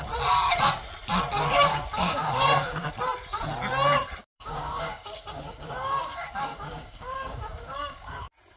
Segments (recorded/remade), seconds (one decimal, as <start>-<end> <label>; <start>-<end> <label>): 0.0-1.7 recorded; 1.7-2.9 remade; 2.9-4.2 recorded; 4.2-8.2 remade; 8.2-8.6 recorded